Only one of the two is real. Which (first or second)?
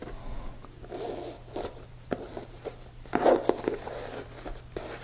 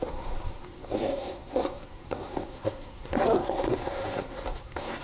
first